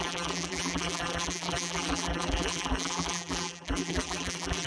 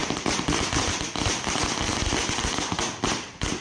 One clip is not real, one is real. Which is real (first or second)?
second